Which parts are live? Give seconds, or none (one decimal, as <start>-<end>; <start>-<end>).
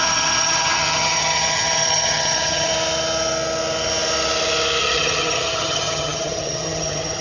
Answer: 2.7-4.8